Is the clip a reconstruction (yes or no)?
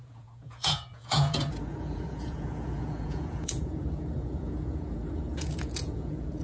yes